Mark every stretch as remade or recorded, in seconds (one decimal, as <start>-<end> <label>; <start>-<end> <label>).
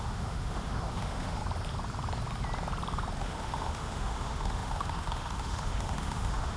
0.0-1.4 remade; 1.4-3.2 recorded; 3.2-6.6 remade